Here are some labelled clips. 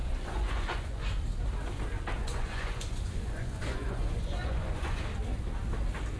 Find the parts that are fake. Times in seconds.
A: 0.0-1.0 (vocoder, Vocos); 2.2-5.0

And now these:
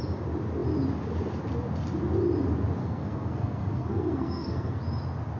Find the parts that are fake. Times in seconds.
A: 2.8-4.8 (codec, SNAC)

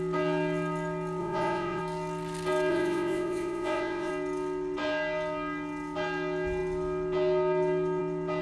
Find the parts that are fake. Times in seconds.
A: 1.2-1.8 (vocoder, Vocos); 2.7-4.1

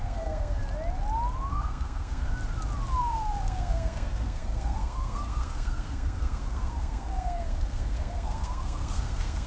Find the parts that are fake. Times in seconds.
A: 0.0-0.6 (codec, SNAC); 1.5-2.3; 3.0-9.5

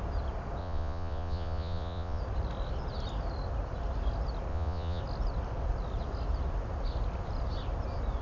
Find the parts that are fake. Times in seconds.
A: 0.6-2.2 (vocoder, Vocos); 4.5-5.0

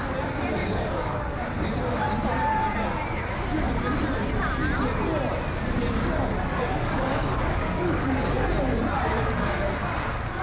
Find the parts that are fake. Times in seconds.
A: 0.6-1.7 (codec, DAC); 6.5-8.3

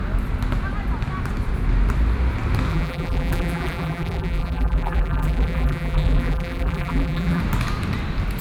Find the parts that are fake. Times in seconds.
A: 2.7-7.4 (vocoder, BigVGAN v2)

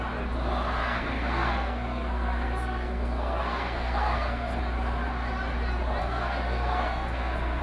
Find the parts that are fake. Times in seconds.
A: 0.8-4.6 (codec, SNAC); 6.0-7.6